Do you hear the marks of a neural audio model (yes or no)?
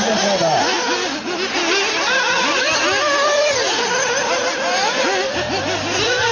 no